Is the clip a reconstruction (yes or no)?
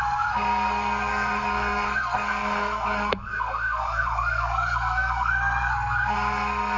yes